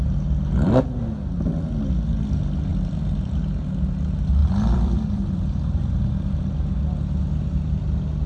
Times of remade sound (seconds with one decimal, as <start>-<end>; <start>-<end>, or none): 2.7-3.4; 4.4-5.9